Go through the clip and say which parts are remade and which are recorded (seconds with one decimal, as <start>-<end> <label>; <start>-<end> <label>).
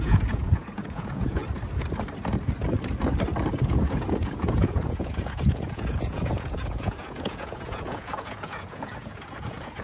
0.0-1.4 remade; 1.4-3.5 recorded; 3.5-9.8 remade